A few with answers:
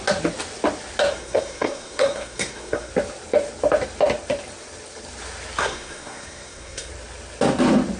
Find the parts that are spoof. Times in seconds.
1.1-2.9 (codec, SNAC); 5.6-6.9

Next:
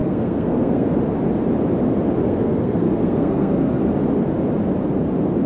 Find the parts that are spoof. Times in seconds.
0.0-1.0 (codec, SNAC); 2.2-3.8

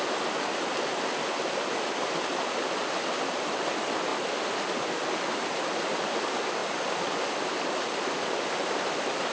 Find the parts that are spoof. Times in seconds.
none

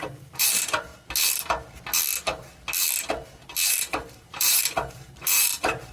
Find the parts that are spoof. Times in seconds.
0.0-0.9 (vocoder, BigVGAN v2); 3.7-5.9